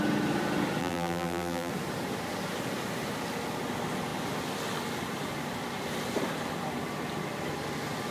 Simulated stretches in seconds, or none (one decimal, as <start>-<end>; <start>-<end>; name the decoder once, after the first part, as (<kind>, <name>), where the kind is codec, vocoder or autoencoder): 0.8-1.7 (vocoder, BigVGAN v2)